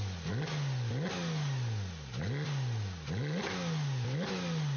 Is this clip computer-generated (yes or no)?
no